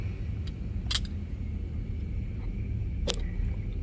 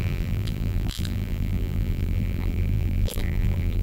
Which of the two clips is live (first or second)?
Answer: first